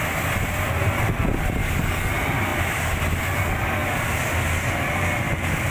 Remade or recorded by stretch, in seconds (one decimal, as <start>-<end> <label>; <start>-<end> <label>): 0.0-1.6 recorded; 1.6-2.1 remade; 2.1-5.7 recorded